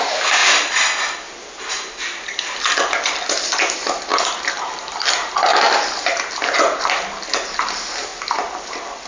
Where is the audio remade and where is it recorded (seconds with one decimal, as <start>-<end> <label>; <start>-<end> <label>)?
0.0-0.4 recorded; 0.4-1.4 remade; 1.4-4.1 recorded; 4.1-5.1 remade; 5.1-9.1 recorded